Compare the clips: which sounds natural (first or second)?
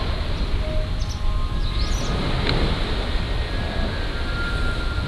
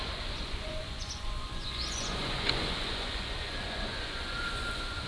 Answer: first